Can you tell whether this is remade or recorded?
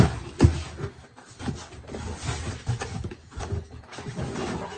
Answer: recorded